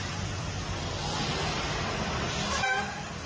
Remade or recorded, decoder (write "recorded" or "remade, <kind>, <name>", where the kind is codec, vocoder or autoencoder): recorded